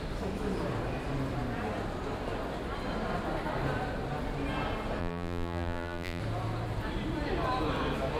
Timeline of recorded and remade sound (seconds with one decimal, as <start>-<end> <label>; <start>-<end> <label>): 0.0-5.0 recorded; 5.0-6.2 remade; 6.2-8.2 recorded